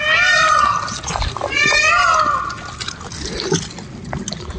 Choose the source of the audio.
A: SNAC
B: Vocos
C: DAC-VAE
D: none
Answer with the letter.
D